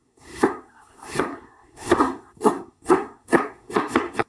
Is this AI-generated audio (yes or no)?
yes